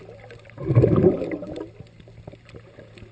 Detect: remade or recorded recorded